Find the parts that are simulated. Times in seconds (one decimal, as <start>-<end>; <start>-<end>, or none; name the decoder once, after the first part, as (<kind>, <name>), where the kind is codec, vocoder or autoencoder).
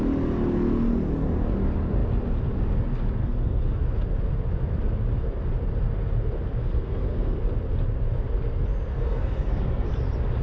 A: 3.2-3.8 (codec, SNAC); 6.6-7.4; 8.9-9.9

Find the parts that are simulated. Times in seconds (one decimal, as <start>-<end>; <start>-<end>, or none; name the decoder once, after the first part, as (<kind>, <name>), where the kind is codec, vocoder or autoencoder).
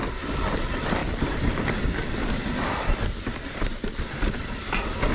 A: none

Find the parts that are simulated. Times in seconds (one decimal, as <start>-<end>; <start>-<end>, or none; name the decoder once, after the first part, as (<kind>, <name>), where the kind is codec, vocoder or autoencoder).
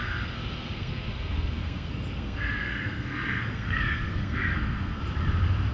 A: 0.0-5.0 (codec, SNAC)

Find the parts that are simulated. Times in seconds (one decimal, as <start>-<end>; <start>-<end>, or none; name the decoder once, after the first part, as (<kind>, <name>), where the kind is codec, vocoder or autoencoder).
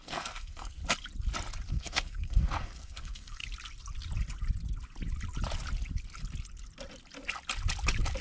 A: 0.0-0.8 (codec, SNAC); 1.7-3.4